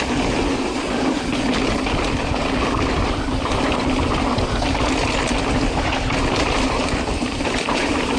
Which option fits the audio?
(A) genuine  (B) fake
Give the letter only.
A